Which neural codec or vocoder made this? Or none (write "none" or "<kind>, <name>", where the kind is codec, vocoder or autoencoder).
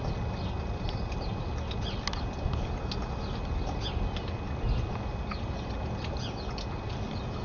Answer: none